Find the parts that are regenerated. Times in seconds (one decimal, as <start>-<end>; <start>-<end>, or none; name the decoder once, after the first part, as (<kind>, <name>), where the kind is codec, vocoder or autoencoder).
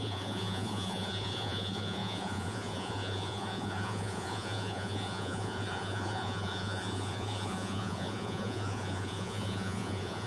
0.0-10.3 (vocoder, Vocos)